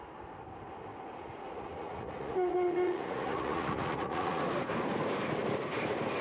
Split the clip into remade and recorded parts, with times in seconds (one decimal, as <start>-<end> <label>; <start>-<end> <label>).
0.0-0.9 recorded; 0.9-4.4 remade; 4.4-6.2 recorded